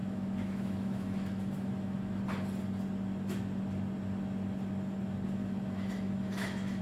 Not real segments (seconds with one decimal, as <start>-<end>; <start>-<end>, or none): 0.0-2.2; 5.4-6.8